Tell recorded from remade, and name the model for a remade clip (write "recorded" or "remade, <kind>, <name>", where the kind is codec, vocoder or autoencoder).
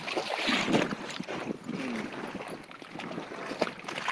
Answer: recorded